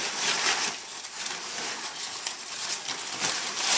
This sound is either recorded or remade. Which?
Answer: recorded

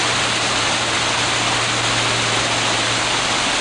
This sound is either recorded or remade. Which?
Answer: recorded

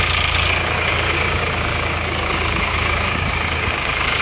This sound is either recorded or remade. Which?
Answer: remade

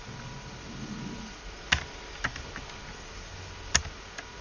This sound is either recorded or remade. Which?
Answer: recorded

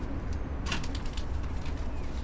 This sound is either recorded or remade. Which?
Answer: recorded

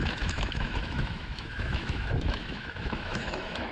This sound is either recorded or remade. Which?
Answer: remade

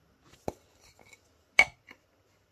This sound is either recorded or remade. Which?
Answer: recorded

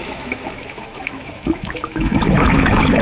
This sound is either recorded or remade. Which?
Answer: remade